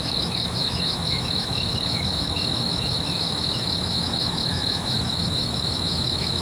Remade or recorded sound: remade